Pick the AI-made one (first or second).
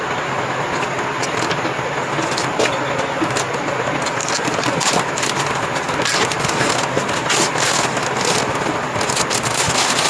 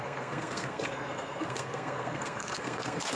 second